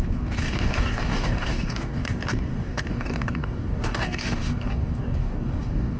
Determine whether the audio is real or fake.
fake